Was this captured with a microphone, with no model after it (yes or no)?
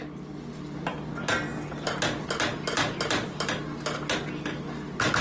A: yes